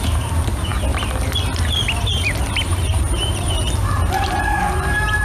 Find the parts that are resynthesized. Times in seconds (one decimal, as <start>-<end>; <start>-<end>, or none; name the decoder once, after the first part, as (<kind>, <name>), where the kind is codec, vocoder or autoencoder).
2.1-5.2 (vocoder, BigVGAN v2)